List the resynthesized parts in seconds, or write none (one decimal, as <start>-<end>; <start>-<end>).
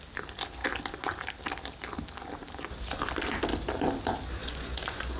4.4-5.2